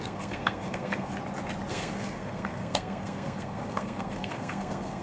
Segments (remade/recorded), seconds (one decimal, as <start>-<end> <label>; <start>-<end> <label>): 0.0-1.1 remade; 1.1-1.7 recorded; 1.7-5.0 remade